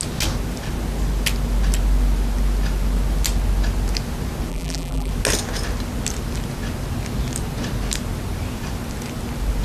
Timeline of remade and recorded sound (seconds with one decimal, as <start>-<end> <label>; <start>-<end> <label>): 0.0-4.5 recorded; 4.5-5.1 remade; 5.1-9.6 recorded